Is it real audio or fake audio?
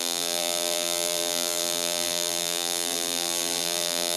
fake